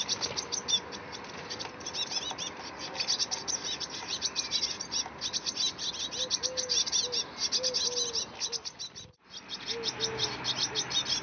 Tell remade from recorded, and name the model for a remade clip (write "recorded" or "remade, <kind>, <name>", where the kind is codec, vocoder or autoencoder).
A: recorded